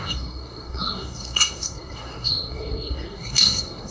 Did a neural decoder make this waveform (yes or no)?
yes